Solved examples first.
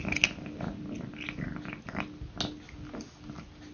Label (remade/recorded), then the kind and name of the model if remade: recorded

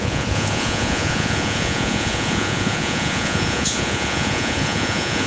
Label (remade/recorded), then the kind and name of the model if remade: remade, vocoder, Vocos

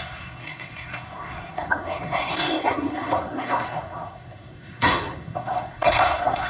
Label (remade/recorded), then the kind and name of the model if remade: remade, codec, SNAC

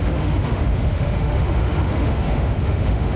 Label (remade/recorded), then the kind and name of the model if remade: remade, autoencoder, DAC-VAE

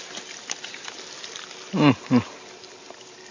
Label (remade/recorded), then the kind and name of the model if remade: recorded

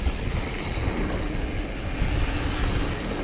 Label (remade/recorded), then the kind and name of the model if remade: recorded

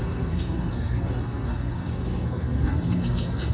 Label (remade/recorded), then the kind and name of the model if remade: remade, codec, SNAC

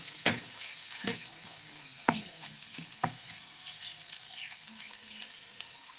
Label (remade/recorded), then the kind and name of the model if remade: remade, codec, SNAC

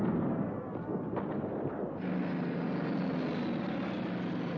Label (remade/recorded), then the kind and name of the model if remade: recorded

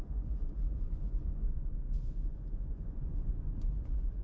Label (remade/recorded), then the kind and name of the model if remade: remade, vocoder, Vocos